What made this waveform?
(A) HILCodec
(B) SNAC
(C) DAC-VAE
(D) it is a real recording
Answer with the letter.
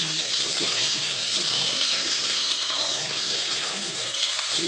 B